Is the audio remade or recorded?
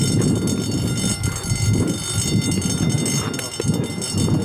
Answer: recorded